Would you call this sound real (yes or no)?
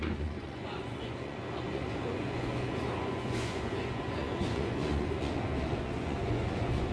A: no